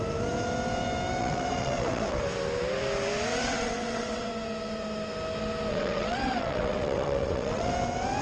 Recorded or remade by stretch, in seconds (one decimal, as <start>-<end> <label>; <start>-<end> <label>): 0.0-1.2 recorded; 1.2-2.2 remade; 2.2-3.3 recorded; 3.3-4.3 remade; 4.3-5.7 recorded; 5.7-7.7 remade; 7.7-8.2 recorded